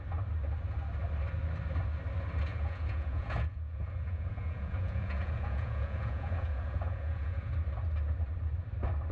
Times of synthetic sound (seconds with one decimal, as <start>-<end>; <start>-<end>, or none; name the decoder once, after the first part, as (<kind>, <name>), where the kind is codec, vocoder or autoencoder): 2.5-7.5 (vocoder, Vocos)